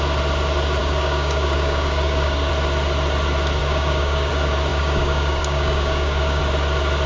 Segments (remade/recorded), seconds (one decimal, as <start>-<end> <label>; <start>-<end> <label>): 0.0-0.8 recorded; 0.8-2.5 remade; 2.5-3.6 recorded; 3.6-4.3 remade; 4.3-4.7 recorded; 4.7-6.4 remade; 6.4-7.1 recorded